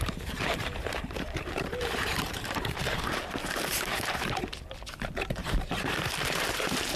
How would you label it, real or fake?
fake